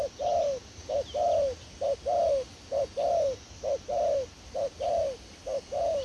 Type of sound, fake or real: real